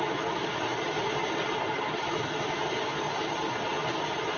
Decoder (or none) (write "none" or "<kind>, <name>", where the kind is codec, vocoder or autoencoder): none